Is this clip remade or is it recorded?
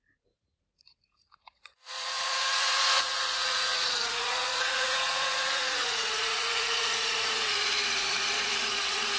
remade